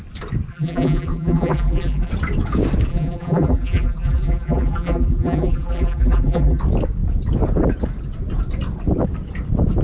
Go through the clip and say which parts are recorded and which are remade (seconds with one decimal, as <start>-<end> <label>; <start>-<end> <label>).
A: 0.0-0.5 recorded; 0.5-2.1 remade; 2.1-2.9 recorded; 2.9-6.6 remade; 6.6-9.8 recorded